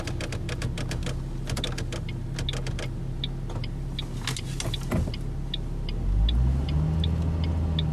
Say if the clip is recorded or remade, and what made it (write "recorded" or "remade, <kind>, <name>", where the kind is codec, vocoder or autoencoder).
recorded